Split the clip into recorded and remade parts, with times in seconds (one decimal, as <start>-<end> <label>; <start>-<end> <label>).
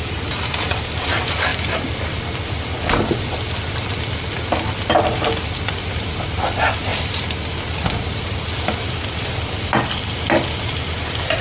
0.0-11.4 recorded